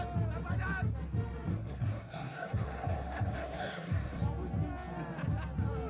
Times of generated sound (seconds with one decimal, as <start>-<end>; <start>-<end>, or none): 1.5-4.2